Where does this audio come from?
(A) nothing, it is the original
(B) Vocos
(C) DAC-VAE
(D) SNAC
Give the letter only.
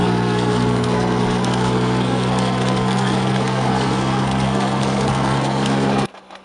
D